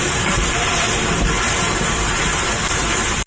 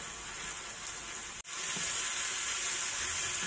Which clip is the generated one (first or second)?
first